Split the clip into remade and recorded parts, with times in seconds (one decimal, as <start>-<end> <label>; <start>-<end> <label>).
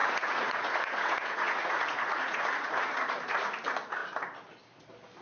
0.0-3.1 remade; 3.1-5.2 recorded